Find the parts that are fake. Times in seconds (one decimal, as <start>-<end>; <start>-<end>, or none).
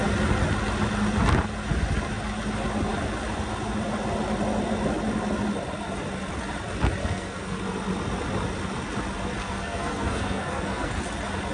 7.0-7.6; 9.4-11.0